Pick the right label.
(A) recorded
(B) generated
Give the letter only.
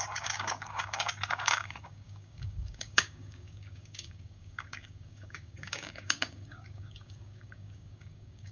B